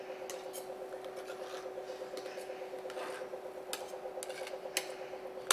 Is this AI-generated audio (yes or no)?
no